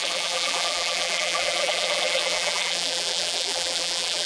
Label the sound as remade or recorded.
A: remade